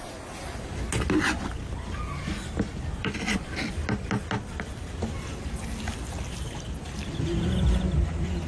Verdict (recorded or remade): recorded